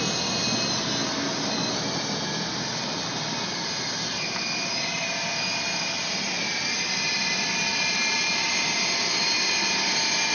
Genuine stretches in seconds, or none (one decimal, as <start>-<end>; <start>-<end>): 0.0-10.3

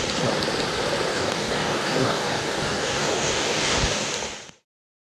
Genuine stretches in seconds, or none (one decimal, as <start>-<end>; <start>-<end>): 0.0-1.1; 4.1-5.0

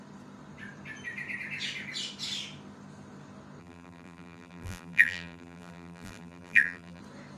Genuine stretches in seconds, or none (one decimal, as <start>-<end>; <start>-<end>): 0.0-3.6; 7.0-7.4

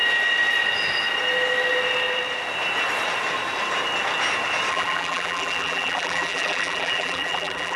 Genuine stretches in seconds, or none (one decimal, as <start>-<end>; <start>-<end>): 0.0-4.7

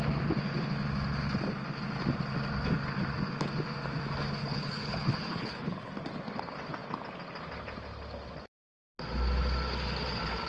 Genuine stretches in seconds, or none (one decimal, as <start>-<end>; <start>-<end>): 0.0-4.4; 5.9-10.5

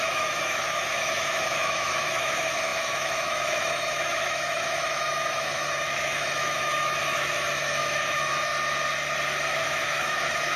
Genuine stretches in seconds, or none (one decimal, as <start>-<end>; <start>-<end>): 8.5-9.5

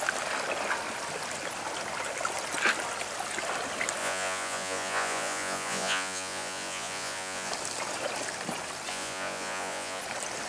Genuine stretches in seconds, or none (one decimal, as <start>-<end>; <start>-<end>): 0.0-4.0; 7.5-8.9; 10.0-10.5

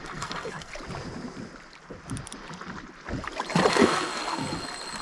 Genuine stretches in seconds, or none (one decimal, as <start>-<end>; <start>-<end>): 0.7-3.7; 4.4-5.0